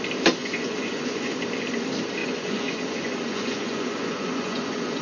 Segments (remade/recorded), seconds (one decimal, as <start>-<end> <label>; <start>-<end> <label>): 0.0-0.4 recorded; 0.4-1.4 remade; 1.4-2.2 recorded; 2.2-5.0 remade